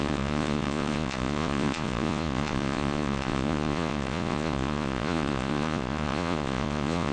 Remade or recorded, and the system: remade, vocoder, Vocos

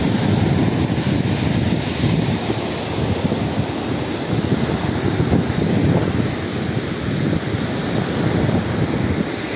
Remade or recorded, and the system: recorded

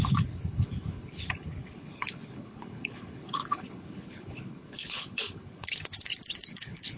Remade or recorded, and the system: remade, codec, HILCodec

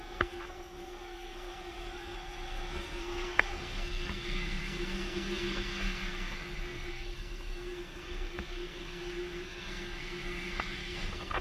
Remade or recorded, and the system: remade, codec, SNAC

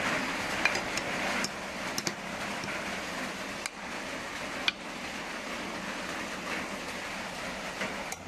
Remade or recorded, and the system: recorded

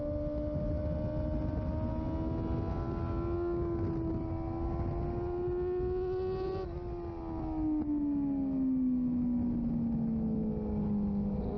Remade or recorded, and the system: recorded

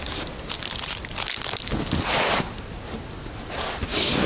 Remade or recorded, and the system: recorded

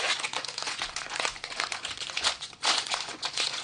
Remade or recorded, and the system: remade, vocoder, Vocos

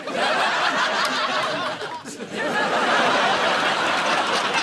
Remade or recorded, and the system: recorded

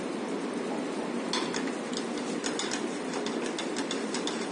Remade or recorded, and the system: recorded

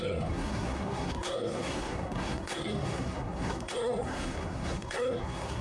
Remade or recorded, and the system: remade, codec, SNAC